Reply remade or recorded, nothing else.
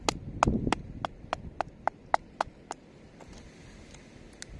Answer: recorded